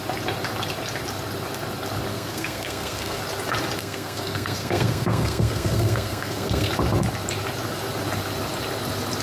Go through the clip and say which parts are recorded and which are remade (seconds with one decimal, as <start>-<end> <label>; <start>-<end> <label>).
0.0-2.1 recorded; 2.1-3.2 remade; 3.2-3.8 recorded; 3.8-6.7 remade; 6.7-9.2 recorded